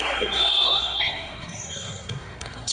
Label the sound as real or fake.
fake